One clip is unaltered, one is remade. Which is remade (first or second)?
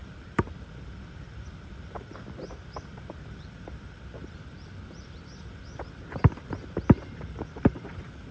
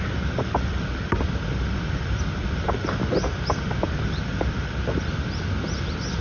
first